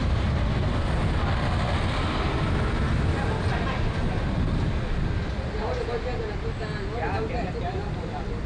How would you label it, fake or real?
real